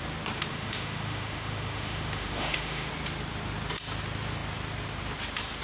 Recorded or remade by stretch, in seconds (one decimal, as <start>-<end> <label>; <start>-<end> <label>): 0.0-0.5 recorded; 0.5-2.9 remade; 2.9-5.6 recorded